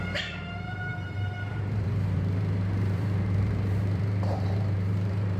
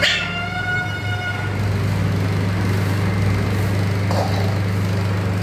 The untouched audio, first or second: second